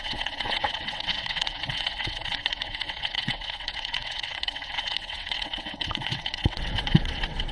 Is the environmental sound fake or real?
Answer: fake